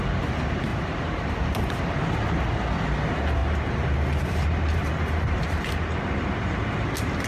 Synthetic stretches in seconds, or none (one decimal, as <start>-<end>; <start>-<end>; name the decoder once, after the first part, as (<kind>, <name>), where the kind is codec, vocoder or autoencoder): 0.7-1.9 (vocoder, BigVGAN v2); 3.4-5.6